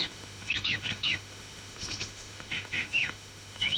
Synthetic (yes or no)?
yes